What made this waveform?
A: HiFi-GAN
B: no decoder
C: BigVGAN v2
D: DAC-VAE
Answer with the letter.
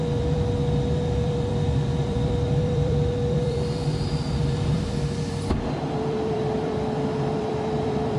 C